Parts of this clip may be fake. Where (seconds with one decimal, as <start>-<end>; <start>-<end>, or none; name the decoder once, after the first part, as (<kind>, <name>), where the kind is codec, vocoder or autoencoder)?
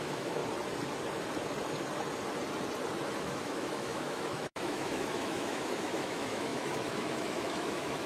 0.0-0.4 (autoencoder, DAC-VAE); 3.2-8.1